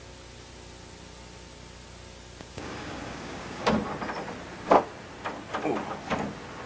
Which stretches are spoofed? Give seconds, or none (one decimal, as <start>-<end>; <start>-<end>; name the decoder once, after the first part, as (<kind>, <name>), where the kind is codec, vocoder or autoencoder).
2.5-3.7 (codec, DAC)